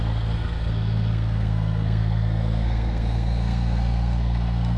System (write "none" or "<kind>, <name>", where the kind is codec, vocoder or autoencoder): codec, SNAC